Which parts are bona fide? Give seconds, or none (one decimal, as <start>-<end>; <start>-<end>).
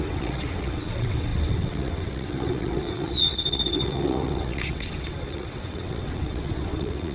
none